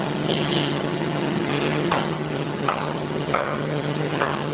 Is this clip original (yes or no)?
no